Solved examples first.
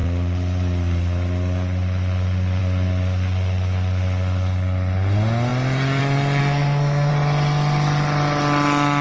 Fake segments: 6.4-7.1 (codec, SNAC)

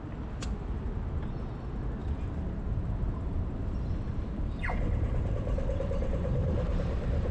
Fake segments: 2.0-2.9 (vocoder, BigVGAN v2); 4.1-7.3

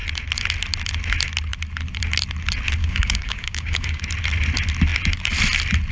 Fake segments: 2.8-4.0 (codec, DAC)

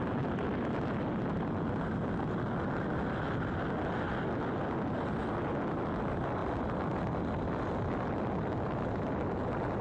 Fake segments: none

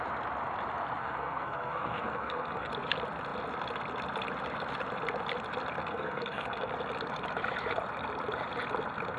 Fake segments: 1.0-2.7 (codec, SNAC); 5.8-6.7

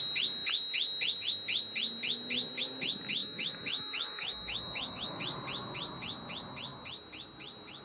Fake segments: 3.2-5.2 (autoencoder, DAC-VAE)

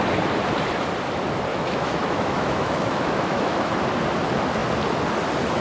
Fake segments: 1.5-3.7 (autoencoder, DAC-VAE)